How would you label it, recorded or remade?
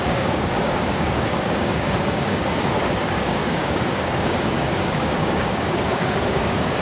remade